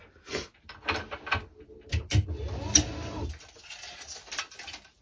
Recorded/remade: recorded